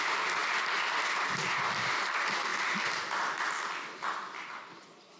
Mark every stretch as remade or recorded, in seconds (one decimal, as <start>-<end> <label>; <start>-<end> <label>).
0.0-5.2 recorded